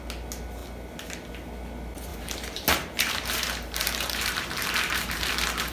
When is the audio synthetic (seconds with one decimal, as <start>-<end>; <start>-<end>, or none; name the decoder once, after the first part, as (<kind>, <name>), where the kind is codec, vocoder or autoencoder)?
2.1-5.3 (vocoder, BigVGAN v2)